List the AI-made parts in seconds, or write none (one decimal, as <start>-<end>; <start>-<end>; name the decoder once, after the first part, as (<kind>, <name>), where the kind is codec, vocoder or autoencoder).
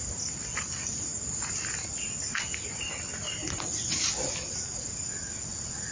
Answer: none